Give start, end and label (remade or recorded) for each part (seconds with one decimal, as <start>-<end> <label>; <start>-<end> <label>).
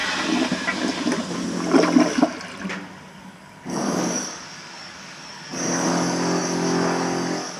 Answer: 0.0-3.1 recorded; 3.1-7.6 remade